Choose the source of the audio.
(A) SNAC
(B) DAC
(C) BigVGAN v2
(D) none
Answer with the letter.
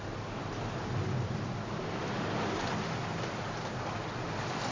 D